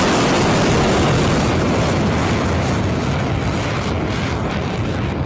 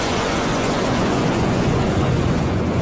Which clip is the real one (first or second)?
first